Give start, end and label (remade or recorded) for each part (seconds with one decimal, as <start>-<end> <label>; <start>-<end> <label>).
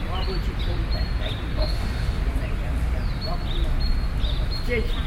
0.0-1.5 recorded; 1.5-2.2 remade; 2.2-5.1 recorded